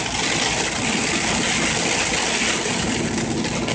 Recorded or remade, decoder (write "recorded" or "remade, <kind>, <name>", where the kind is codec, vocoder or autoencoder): recorded